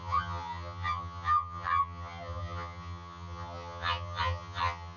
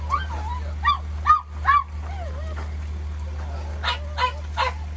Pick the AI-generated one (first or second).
first